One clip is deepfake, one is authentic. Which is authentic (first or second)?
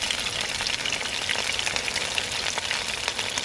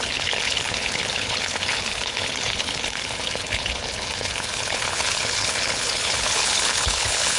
first